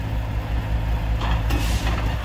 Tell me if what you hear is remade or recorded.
recorded